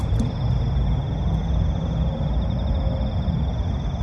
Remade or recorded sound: recorded